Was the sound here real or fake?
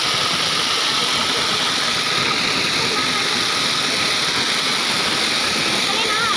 real